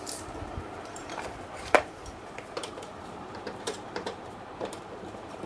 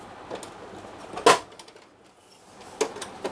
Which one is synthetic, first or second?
first